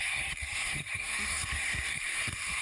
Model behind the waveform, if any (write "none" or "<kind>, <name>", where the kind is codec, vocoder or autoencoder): codec, SNAC